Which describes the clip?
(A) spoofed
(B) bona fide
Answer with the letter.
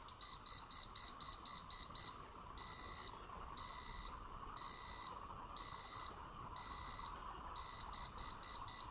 B